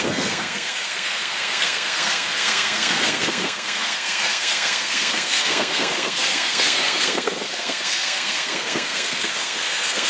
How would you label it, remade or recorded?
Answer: remade